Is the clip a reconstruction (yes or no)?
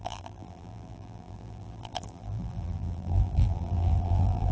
yes